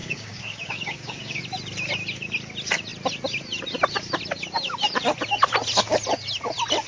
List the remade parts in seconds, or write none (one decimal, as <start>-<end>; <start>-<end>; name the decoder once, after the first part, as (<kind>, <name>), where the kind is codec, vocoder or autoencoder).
0.0-1.4 (codec, DAC)

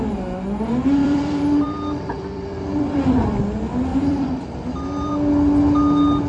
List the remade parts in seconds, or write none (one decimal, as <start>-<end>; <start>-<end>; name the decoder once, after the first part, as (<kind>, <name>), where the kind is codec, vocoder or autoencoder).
1.0-3.4 (vocoder, BigVGAN v2); 3.9-5.1

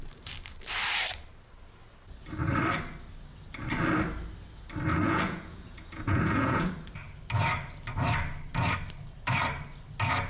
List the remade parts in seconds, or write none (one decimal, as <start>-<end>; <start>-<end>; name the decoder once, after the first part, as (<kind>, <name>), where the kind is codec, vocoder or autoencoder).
4.9-6.7 (vocoder, Vocos)

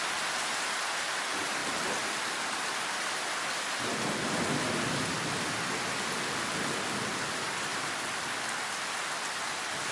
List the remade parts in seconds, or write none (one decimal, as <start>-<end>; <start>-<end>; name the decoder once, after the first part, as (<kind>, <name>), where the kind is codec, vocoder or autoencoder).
1.6-4.1 (vocoder, BigVGAN v2); 7.7-9.2